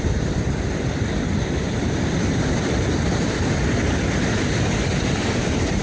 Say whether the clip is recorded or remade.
recorded